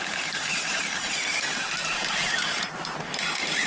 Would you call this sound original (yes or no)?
no